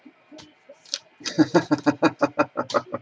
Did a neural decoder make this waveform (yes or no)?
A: no